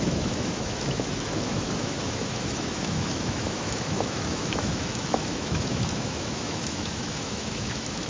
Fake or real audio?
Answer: fake